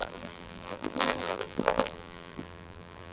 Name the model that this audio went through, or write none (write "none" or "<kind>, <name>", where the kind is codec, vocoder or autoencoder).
vocoder, BigVGAN v2